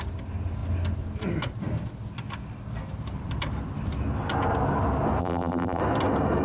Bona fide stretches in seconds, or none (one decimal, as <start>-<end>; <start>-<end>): 0.0-5.2; 5.8-6.4